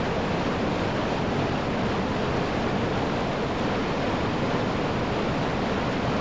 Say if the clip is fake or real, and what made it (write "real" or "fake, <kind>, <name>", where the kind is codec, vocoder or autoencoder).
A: real